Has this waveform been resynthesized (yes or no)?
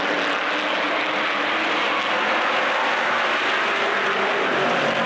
no